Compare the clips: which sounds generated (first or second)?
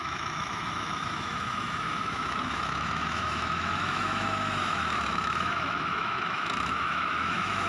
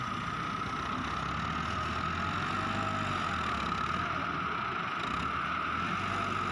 first